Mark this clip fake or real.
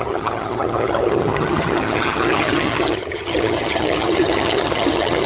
fake